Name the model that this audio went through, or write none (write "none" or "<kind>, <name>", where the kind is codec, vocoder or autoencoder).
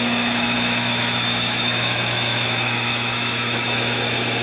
autoencoder, DAC-VAE